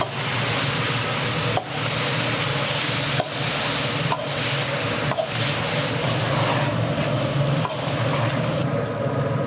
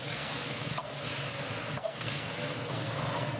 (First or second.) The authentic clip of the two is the first